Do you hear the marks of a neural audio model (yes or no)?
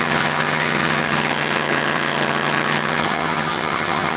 yes